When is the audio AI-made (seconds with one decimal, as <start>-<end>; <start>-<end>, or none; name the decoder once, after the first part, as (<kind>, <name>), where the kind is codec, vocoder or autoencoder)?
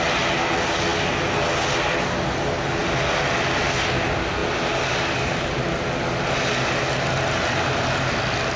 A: none